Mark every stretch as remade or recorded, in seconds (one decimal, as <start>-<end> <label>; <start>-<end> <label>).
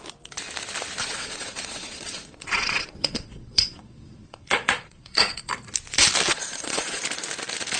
0.0-1.0 recorded; 1.0-5.5 remade; 5.5-6.3 recorded; 6.3-7.0 remade; 7.0-7.8 recorded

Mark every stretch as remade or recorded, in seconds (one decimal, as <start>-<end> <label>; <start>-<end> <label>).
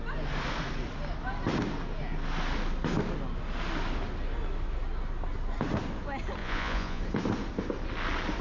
0.0-6.4 recorded; 6.4-7.0 remade; 7.0-8.4 recorded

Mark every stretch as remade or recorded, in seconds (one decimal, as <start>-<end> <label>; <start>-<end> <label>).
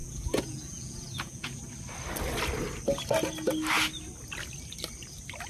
0.0-1.6 remade; 1.6-5.5 recorded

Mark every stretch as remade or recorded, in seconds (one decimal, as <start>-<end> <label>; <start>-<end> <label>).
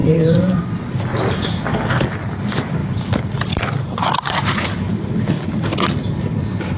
0.0-0.6 remade; 0.6-6.8 recorded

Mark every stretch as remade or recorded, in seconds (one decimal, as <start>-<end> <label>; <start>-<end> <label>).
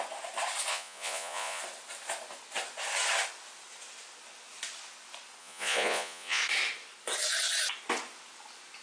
0.0-0.7 recorded; 0.7-1.6 remade; 1.6-5.4 recorded; 5.4-6.4 remade; 6.4-8.8 recorded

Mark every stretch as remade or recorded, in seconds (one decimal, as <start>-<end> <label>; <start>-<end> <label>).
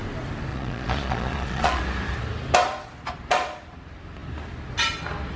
0.0-0.5 recorded; 0.5-1.8 remade; 1.8-5.4 recorded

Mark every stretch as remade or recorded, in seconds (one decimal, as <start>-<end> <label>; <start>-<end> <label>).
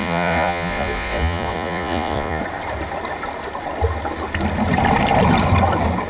0.0-2.4 remade; 2.4-6.1 recorded